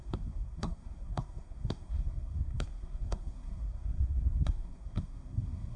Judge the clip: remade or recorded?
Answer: remade